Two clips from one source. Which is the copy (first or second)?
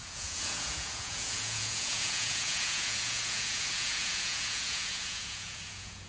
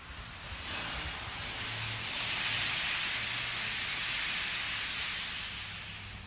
first